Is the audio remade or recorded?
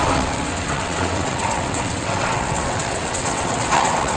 remade